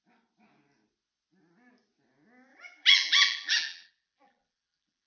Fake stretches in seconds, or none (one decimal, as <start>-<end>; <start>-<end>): 2.5-5.1

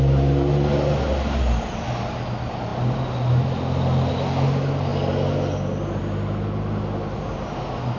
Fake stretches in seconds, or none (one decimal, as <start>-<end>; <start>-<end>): none